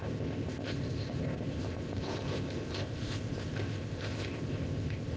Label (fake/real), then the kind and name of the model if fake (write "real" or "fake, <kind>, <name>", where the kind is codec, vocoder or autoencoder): fake, codec, ZipCodec